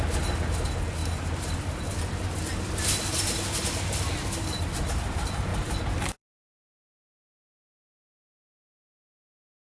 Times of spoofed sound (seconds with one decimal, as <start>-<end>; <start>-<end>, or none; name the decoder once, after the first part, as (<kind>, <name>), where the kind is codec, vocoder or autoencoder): none

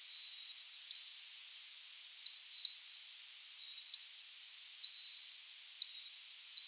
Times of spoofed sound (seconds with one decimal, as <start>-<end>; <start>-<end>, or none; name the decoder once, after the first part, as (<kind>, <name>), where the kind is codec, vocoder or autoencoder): none

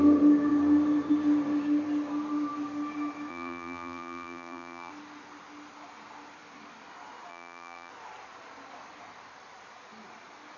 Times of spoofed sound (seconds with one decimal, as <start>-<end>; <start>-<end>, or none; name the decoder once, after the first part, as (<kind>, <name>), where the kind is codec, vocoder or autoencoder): 3.3-4.9 (vocoder, BigVGAN v2); 7.3-7.9

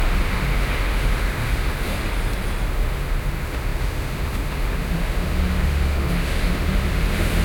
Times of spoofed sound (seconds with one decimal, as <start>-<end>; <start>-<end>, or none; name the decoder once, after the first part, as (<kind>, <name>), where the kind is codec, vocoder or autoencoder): 0.0-1.9 (autoencoder, DAC-VAE); 2.7-7.4

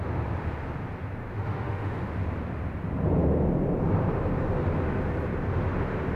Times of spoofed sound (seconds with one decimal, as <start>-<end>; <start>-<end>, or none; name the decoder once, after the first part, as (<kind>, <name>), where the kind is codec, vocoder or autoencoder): 1.2-2.0 (autoencoder, DAC-VAE)

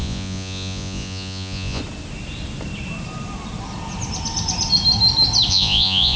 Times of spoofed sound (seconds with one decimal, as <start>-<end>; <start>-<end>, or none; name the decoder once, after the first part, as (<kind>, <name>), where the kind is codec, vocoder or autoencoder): 0.0-1.8 (vocoder, Vocos); 5.5-6.2

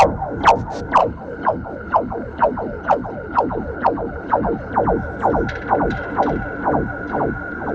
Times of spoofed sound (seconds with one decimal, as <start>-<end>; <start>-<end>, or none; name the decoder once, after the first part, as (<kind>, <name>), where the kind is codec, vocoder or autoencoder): 1.0-4.7 (codec, HILCodec)